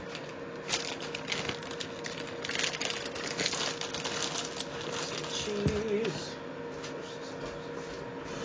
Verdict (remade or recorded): recorded